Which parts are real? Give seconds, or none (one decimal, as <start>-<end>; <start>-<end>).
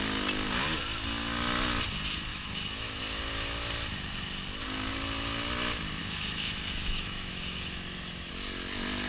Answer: 0.0-2.3; 3.0-6.0; 8.3-9.1